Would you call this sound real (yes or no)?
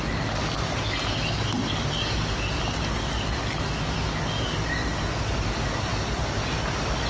yes